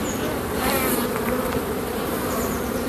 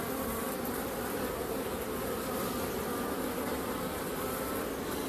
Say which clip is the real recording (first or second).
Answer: second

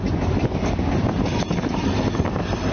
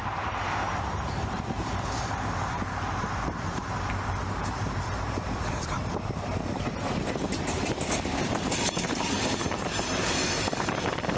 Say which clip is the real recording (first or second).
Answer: first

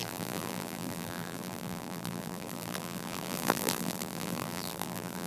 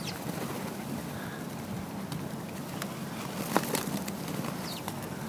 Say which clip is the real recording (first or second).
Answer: second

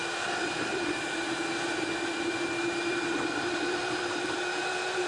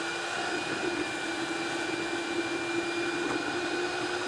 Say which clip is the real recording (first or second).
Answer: second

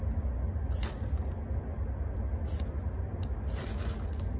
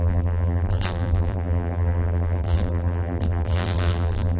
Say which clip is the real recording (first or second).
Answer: first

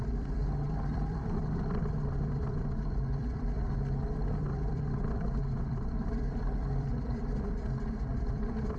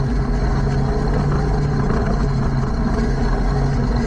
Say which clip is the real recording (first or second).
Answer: second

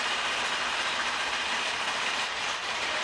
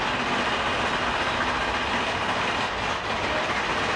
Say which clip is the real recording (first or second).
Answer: second